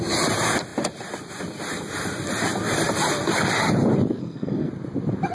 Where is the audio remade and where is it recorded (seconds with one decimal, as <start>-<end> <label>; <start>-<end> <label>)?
0.0-4.2 recorded; 4.2-4.7 remade; 4.7-5.3 recorded